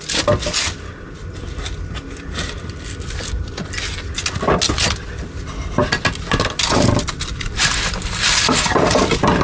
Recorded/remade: recorded